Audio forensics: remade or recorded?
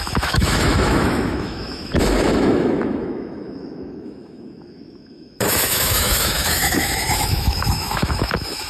remade